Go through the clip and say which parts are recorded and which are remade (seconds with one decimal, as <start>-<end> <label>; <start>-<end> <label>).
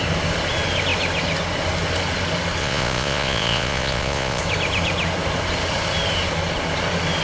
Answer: 0.0-2.6 recorded; 2.6-4.4 remade; 4.4-7.2 recorded